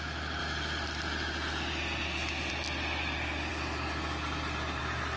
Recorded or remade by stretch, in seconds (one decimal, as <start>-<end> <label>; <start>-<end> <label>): 0.0-5.2 recorded